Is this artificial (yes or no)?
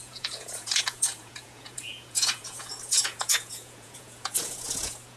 yes